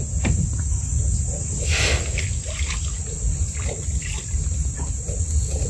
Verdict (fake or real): real